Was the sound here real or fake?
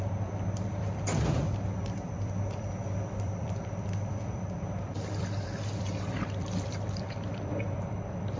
fake